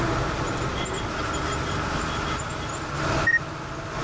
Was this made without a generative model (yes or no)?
yes